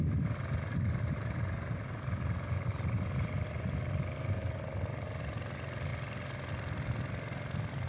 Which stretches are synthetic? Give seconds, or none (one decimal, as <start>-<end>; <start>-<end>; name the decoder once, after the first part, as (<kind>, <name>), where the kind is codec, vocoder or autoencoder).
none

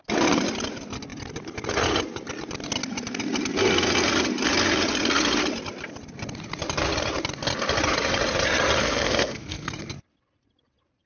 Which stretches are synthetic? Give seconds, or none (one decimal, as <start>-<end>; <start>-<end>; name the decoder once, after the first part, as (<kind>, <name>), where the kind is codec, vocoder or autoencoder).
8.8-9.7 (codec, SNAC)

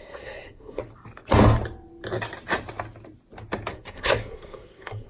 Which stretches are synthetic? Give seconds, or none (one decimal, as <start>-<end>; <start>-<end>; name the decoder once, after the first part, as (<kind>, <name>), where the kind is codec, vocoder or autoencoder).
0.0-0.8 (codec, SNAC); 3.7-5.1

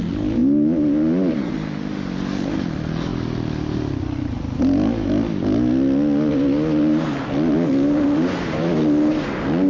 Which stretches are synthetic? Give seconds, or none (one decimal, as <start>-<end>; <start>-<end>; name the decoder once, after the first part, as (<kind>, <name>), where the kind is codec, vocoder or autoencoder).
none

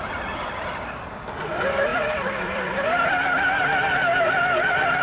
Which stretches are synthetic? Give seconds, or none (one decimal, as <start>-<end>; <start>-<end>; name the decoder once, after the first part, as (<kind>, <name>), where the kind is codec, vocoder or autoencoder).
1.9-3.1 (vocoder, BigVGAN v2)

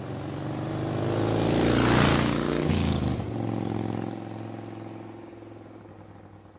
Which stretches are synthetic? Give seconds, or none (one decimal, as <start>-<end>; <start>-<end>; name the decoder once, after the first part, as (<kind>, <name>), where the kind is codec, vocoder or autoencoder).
2.1-2.9 (codec, DAC)

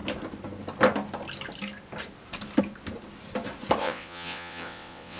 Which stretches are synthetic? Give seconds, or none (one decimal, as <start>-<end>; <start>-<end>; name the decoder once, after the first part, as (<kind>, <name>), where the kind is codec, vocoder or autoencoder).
3.8-5.2 (vocoder, WaveNeXt)

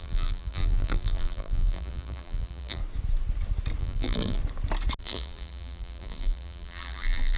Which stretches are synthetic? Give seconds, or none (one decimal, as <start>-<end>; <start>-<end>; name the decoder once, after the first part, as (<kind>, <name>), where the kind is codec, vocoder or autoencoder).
0.0-2.8 (vocoder, BigVGAN v2); 3.8-4.4; 5.0-7.4